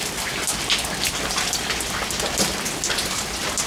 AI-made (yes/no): no